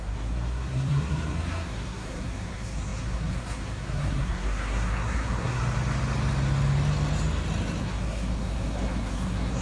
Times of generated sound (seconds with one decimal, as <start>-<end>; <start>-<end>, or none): 0.0-5.6; 7.8-9.6